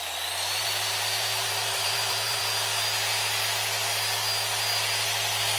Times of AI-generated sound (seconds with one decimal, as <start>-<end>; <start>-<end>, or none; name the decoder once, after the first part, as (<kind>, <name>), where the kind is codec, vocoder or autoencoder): 0.6-2.4 (vocoder, BigVGAN v2)